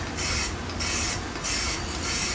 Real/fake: real